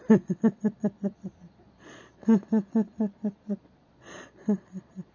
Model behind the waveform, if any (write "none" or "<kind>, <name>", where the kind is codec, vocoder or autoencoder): vocoder, Vocos